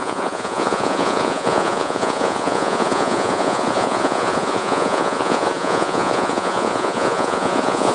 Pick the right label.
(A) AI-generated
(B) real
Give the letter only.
A